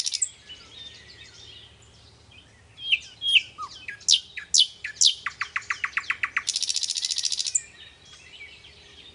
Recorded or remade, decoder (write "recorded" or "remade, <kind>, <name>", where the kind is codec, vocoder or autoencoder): recorded